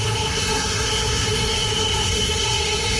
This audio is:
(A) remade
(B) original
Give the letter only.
A